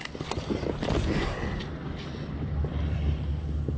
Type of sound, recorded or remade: recorded